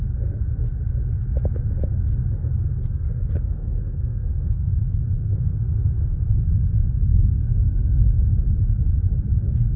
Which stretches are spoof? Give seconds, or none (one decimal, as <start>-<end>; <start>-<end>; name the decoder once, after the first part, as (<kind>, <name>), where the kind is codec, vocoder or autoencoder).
2.8-5.5 (codec, SNAC); 7.1-8.2